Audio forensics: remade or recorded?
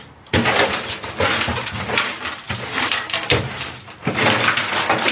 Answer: recorded